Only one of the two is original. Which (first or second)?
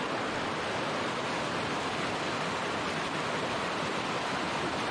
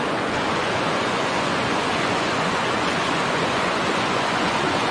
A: first